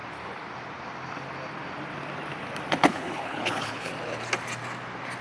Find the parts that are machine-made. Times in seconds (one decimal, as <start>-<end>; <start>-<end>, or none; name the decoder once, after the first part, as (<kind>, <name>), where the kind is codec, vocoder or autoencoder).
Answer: 2.8-3.9 (codec, HILCodec)